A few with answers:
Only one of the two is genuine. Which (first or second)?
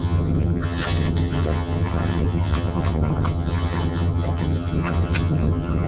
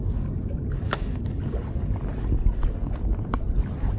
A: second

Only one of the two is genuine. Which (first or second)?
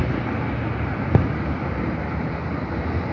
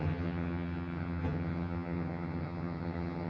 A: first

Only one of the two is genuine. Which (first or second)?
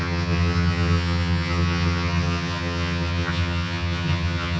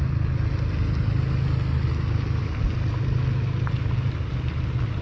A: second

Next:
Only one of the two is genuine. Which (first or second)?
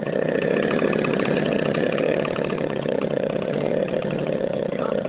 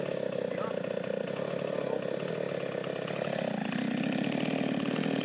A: second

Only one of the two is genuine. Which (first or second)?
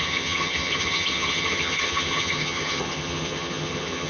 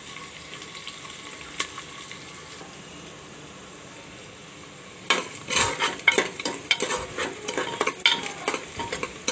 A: second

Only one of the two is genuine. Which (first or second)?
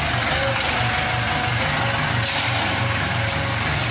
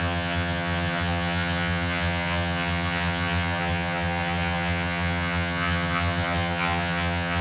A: first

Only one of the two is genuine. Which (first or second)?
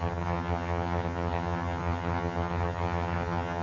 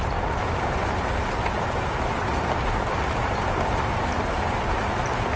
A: second